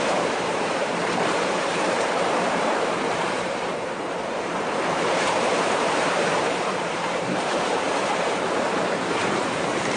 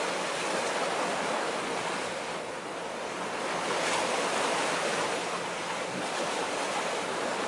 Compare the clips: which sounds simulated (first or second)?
first